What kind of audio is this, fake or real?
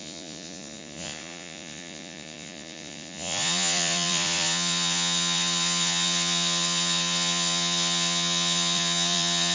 fake